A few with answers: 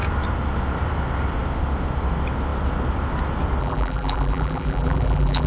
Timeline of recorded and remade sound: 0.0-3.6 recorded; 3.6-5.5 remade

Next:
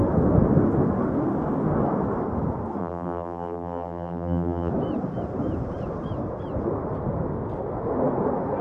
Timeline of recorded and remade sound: 0.0-2.8 recorded; 2.8-4.7 remade; 4.7-8.6 recorded

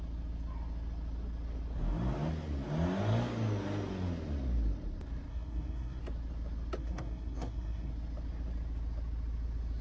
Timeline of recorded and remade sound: 0.0-5.3 recorded; 5.3-6.0 remade; 6.0-6.8 recorded; 6.8-7.9 remade; 7.9-9.8 recorded

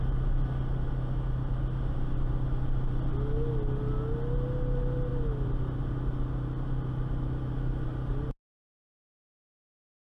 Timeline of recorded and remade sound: 0.0-10.2 recorded

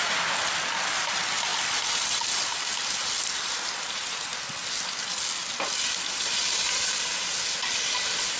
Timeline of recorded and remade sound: 0.0-4.3 remade; 4.3-8.4 recorded